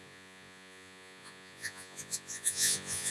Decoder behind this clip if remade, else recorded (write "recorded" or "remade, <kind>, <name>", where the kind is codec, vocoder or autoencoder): remade, vocoder, Vocos